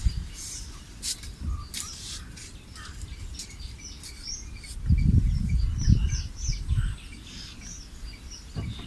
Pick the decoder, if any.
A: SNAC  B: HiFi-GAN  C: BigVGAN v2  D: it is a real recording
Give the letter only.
D